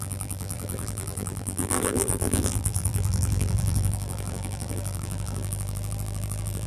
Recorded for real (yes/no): no